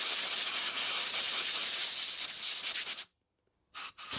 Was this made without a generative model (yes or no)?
yes